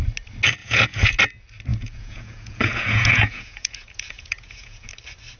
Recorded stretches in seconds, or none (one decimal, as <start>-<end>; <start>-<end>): 0.0-0.6; 1.2-1.7; 4.9-5.4